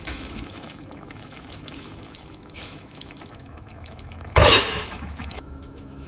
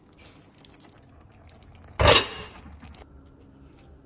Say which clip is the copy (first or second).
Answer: first